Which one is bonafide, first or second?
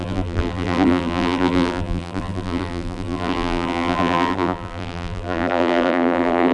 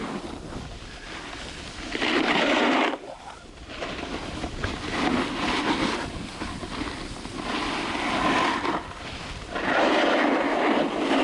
second